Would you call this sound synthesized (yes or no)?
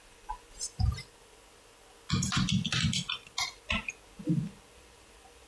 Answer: no